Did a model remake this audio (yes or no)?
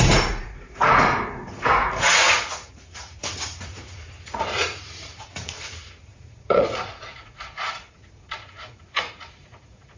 yes